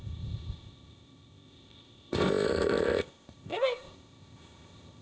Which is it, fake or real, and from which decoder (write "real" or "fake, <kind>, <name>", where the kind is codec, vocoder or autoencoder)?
fake, codec, ZipCodec